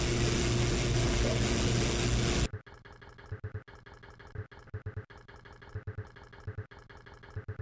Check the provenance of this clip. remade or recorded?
recorded